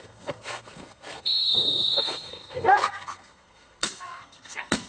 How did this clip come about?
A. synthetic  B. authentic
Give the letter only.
A